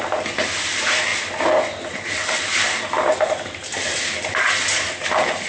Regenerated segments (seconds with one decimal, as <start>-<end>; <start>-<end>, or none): none